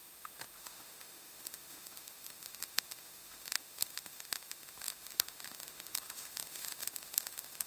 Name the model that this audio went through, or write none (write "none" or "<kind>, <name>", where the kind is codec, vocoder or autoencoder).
autoencoder, DAC-VAE